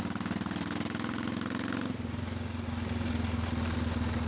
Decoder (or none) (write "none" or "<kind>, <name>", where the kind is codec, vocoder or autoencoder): none